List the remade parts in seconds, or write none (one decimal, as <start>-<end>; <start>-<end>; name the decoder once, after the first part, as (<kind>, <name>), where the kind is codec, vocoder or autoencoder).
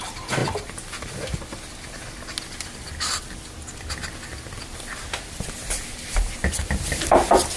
none